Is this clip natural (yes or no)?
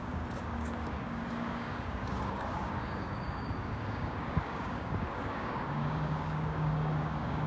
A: no